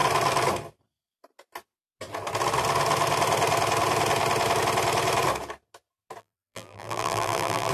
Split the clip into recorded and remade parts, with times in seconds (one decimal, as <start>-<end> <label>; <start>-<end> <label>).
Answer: 0.0-6.2 recorded; 6.2-7.7 remade